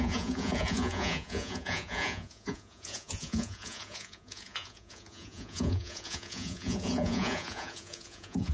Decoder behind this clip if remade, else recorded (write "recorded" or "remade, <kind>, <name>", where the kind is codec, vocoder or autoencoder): remade, vocoder, Vocos